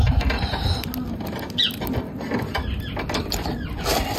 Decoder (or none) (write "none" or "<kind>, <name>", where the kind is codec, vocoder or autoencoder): none